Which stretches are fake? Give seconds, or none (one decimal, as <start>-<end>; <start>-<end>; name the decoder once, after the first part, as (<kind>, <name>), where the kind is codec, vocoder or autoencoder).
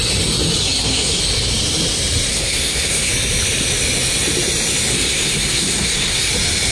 0.6-1.2 (codec, SNAC); 2.3-3.1; 4.9-6.3